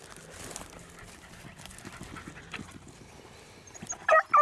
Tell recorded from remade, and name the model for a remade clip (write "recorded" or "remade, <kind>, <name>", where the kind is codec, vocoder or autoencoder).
recorded